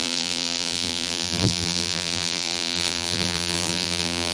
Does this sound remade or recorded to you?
remade